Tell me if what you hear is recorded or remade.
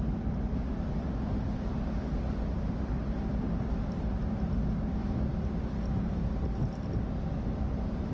recorded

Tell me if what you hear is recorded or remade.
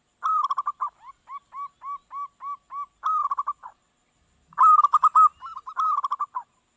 recorded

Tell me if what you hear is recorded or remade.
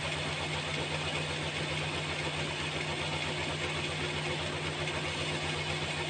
recorded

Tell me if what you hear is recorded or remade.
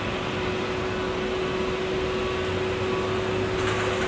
recorded